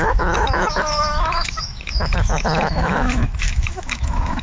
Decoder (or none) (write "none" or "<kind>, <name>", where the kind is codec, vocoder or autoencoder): autoencoder, DAC-VAE